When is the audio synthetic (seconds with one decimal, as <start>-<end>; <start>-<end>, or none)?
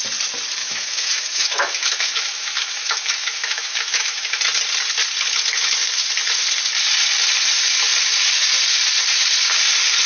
0.6-4.4